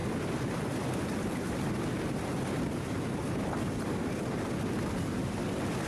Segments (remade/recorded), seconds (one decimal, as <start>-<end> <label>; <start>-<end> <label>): 0.0-5.9 recorded